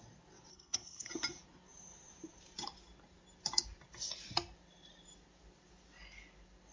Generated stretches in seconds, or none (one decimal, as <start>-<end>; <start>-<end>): 0.5-1.1